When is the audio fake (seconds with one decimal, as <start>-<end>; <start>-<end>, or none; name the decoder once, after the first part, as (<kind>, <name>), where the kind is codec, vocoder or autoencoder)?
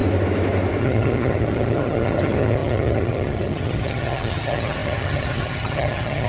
0.8-6.3 (vocoder, HiFi-GAN)